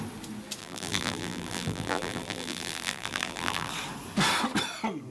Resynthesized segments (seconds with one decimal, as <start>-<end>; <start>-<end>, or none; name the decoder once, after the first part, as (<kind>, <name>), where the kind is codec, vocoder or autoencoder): 0.6-3.7 (vocoder, BigVGAN v2)